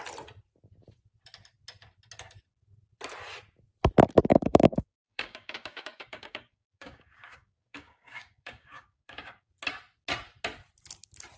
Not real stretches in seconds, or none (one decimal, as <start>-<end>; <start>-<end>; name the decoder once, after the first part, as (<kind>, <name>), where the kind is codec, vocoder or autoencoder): 4.3-9.5 (codec, DAC)